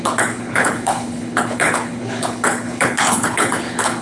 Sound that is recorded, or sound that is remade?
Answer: remade